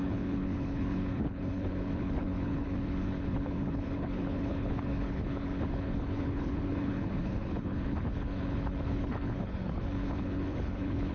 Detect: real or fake fake